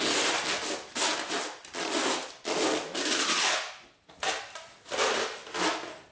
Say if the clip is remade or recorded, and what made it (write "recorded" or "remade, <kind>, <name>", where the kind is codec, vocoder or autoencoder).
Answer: recorded